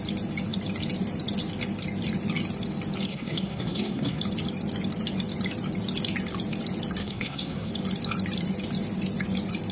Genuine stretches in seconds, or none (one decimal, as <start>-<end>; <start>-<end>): 0.0-3.1; 4.2-7.0; 7.7-9.7